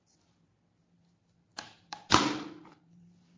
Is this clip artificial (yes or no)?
yes